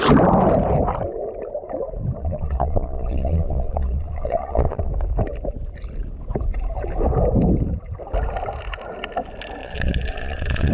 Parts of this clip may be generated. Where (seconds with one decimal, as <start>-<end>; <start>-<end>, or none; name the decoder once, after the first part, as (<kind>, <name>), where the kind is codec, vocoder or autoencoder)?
2.2-4.9 (vocoder, Vocos); 9.6-10.7